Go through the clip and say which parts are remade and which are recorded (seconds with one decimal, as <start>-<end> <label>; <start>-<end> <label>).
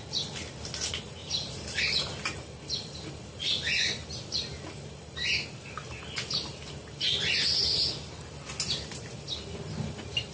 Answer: 0.0-1.2 recorded; 1.2-1.8 remade; 1.8-10.3 recorded